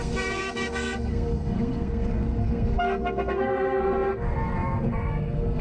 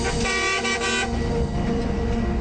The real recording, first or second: second